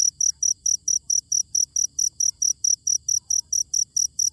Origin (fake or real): real